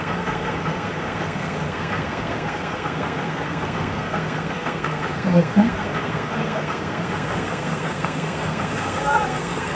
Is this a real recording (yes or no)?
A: no